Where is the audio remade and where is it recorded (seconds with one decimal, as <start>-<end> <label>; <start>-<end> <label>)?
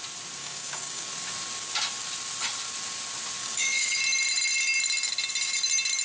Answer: 0.0-0.4 recorded; 0.4-1.1 remade; 1.1-3.4 recorded; 3.4-4.0 remade; 4.0-6.0 recorded